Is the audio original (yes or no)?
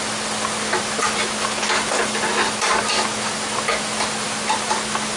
yes